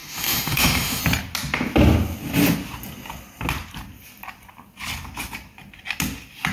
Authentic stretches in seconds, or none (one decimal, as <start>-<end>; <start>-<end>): 1.0-6.5